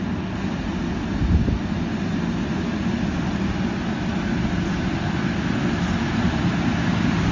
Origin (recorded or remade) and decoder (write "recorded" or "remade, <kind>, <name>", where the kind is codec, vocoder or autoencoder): recorded